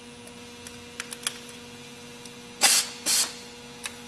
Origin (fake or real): real